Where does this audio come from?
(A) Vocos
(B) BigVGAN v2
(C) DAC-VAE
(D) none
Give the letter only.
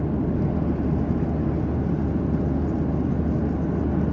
D